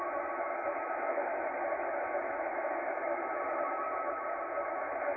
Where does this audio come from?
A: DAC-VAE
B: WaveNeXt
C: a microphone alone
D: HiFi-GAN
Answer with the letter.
A